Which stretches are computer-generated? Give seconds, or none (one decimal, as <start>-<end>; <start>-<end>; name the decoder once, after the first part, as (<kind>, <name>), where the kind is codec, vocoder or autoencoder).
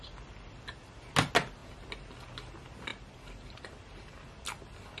none